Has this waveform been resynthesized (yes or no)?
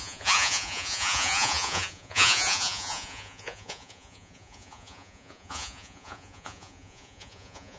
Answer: yes